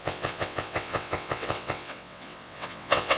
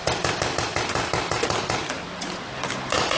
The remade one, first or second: first